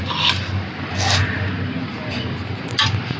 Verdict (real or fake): real